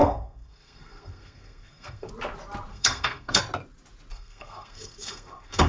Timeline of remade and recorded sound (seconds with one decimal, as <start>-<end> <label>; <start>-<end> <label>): 0.0-2.1 remade; 2.1-2.7 recorded; 2.7-3.4 remade; 3.4-4.1 recorded; 4.1-5.7 remade